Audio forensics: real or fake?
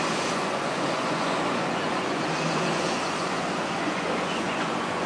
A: fake